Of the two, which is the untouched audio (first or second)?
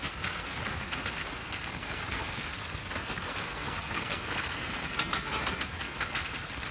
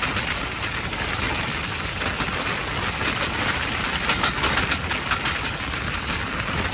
second